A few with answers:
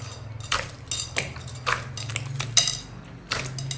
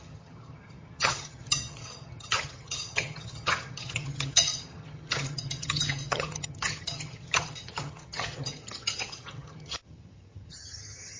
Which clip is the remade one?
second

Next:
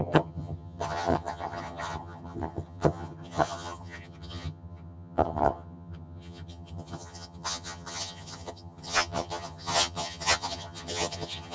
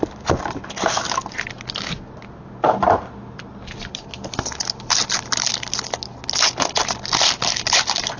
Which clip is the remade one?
first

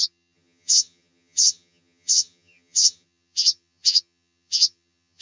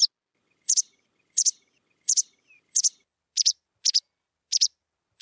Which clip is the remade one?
first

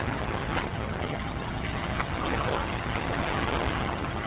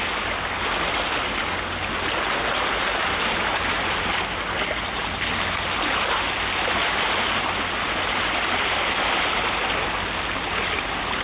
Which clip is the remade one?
first